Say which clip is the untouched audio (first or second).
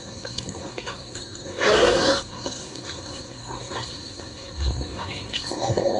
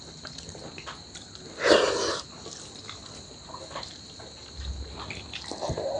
second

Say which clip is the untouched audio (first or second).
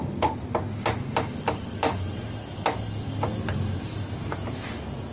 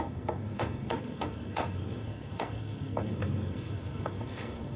first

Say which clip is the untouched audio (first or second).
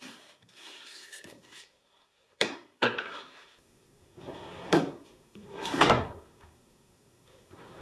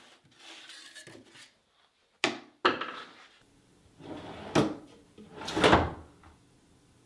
second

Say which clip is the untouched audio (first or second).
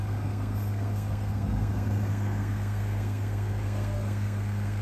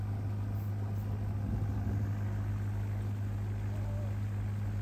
second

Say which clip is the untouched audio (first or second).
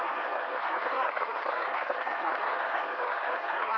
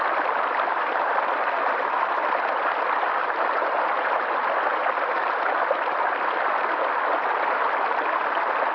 second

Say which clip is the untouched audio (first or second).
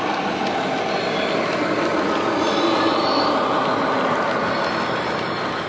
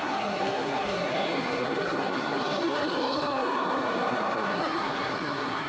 first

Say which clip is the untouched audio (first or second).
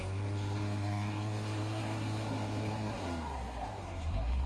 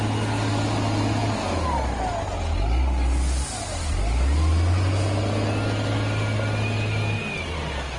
second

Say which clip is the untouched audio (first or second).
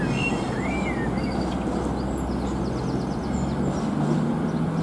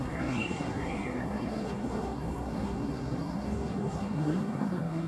first